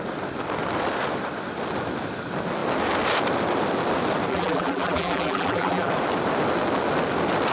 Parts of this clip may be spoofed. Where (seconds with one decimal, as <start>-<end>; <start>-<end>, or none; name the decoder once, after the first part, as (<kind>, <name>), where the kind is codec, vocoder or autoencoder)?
4.3-5.9 (vocoder, BigVGAN v2)